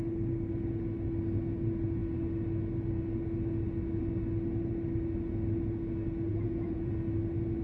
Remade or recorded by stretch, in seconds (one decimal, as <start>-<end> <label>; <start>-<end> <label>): 0.0-6.3 recorded; 6.3-6.9 remade; 6.9-7.6 recorded